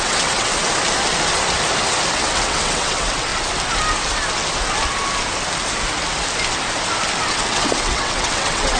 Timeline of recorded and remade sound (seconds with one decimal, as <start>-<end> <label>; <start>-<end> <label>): 0.0-0.5 remade; 0.5-2.1 recorded; 2.1-3.3 remade; 3.3-7.3 recorded; 7.3-8.8 remade